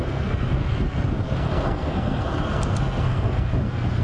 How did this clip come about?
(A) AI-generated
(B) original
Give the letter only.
A